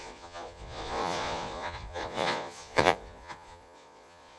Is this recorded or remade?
remade